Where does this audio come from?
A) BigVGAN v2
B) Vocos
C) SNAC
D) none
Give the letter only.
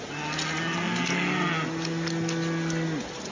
D